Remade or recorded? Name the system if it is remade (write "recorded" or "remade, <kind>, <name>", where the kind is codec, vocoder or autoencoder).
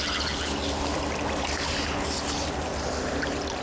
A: recorded